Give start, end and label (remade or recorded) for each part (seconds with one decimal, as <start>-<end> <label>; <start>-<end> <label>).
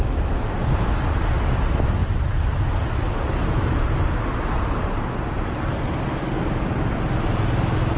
0.0-8.0 recorded